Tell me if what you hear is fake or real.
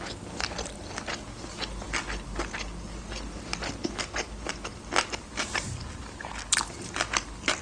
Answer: real